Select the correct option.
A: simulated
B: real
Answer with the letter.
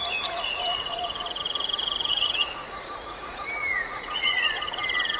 A